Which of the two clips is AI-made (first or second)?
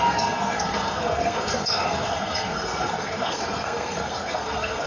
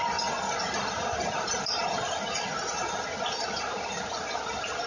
first